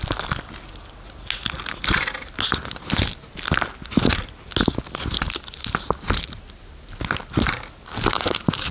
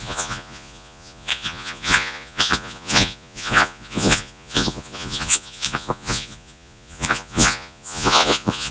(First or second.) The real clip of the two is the first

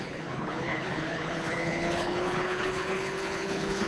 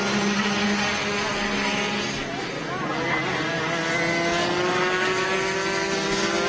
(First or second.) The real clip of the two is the second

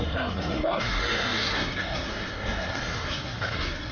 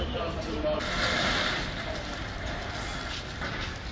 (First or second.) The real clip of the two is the second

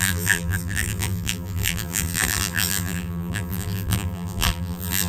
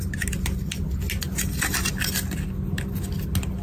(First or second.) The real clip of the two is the second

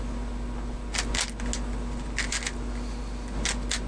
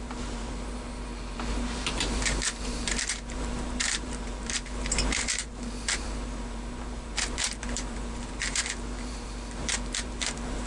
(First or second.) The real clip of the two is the first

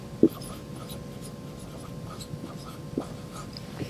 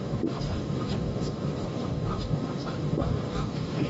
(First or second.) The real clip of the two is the first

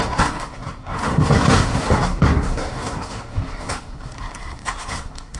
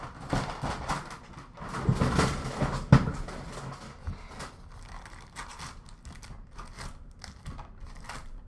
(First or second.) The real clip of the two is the second